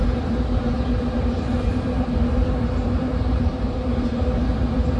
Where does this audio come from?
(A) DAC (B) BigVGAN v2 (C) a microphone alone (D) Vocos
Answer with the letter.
B